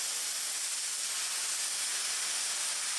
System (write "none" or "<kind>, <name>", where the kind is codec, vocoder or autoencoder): none